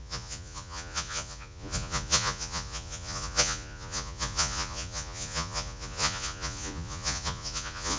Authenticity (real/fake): fake